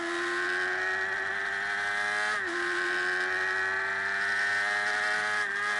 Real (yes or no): yes